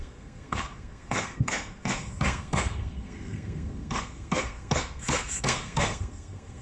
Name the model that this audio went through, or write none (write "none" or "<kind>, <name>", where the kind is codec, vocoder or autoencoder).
codec, SNAC